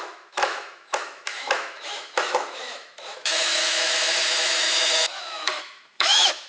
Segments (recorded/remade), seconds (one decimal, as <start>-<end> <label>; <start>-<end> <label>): 0.0-6.5 remade